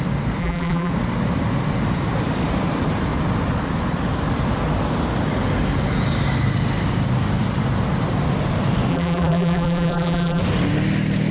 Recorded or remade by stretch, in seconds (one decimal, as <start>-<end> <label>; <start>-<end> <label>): 0.0-0.4 recorded; 0.4-0.9 remade; 0.9-8.9 recorded; 8.9-10.4 remade; 10.4-11.3 recorded